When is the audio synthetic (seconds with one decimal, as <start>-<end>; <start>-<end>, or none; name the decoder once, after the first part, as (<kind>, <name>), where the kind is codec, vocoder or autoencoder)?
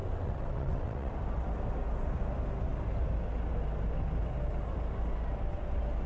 0.0-1.1 (vocoder, WaveNeXt)